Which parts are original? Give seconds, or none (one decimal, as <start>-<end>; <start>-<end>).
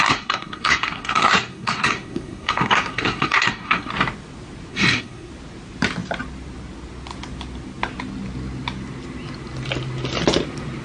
3.9-4.7; 5.3-10.8